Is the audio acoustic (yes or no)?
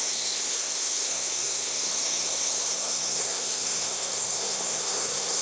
no